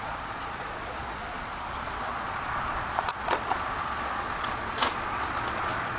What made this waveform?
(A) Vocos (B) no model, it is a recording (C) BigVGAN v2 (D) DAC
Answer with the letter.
A